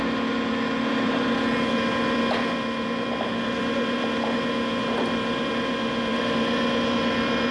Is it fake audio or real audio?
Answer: fake